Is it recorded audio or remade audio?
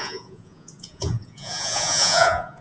remade